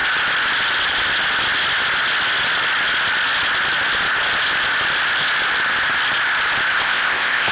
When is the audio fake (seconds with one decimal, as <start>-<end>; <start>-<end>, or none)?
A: 6.7-7.5